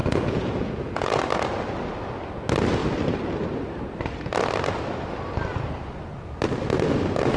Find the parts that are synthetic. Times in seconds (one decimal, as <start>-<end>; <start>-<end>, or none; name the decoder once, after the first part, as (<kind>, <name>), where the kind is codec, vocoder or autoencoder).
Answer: 0.0-1.2 (vocoder, Vocos)